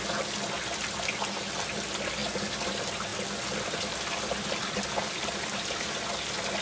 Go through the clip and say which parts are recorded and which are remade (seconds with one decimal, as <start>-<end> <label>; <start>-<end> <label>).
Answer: 0.0-6.6 recorded